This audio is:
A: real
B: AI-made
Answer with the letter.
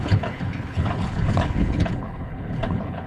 B